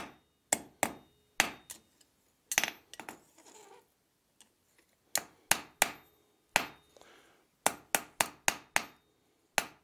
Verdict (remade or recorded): recorded